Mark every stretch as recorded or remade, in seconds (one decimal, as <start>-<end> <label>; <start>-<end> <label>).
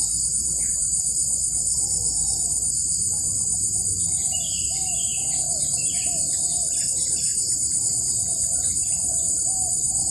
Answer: 0.0-10.1 remade